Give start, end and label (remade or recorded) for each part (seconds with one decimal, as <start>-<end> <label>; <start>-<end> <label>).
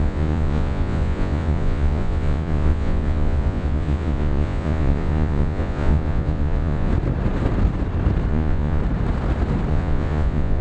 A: 0.0-6.9 remade; 6.9-8.3 recorded; 8.3-8.8 remade; 8.8-9.7 recorded; 9.7-10.6 remade